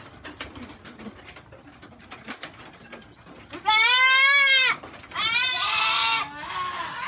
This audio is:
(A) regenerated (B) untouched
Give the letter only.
B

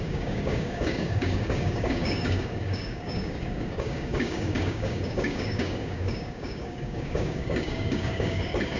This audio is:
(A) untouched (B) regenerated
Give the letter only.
B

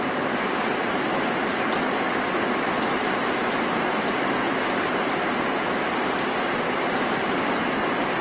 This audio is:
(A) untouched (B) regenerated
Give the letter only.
A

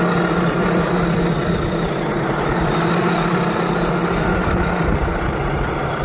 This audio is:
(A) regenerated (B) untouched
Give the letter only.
B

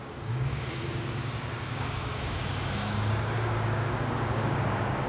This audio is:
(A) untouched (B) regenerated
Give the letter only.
B